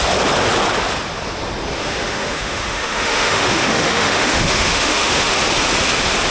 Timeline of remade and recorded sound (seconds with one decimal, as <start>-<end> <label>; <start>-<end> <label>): 0.0-1.8 recorded; 1.8-5.3 remade; 5.3-6.3 recorded